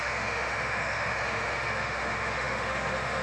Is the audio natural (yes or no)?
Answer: no